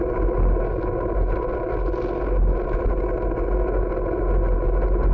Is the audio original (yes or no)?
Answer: yes